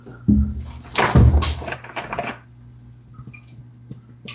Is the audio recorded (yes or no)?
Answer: yes